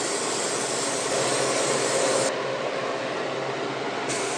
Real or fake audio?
real